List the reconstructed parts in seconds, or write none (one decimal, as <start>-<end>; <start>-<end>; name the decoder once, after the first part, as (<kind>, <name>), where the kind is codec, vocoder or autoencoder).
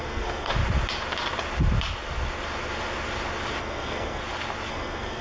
0.0-0.5 (codec, SNAC); 3.6-4.2; 4.7-5.2